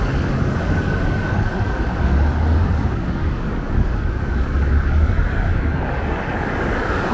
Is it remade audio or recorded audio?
remade